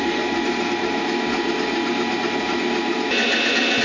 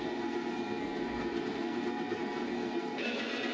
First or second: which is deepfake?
second